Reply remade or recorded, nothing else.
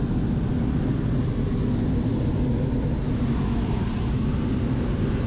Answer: recorded